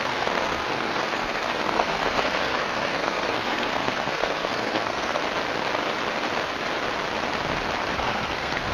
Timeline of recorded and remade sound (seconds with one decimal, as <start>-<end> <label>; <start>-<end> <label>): 0.0-5.2 remade; 5.2-7.9 recorded; 7.9-8.7 remade